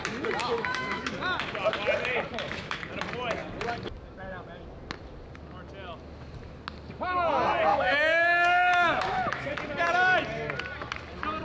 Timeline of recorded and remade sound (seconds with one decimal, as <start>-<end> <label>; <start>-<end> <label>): 0.0-0.4 recorded; 0.4-1.1 remade; 1.1-2.3 recorded; 2.3-2.8 remade; 2.8-7.7 recorded; 7.7-9.5 remade; 9.5-11.4 recorded